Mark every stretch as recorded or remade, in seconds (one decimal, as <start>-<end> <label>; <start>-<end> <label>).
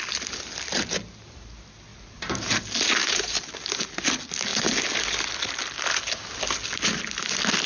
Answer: 0.0-1.9 recorded; 1.9-2.6 remade; 2.6-3.0 recorded; 3.0-4.0 remade; 4.0-7.7 recorded